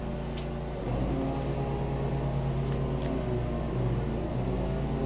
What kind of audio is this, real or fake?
real